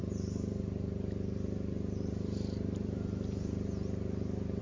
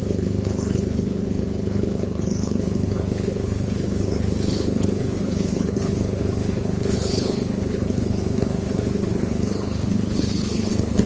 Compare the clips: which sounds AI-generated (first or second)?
second